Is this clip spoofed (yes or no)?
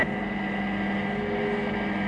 no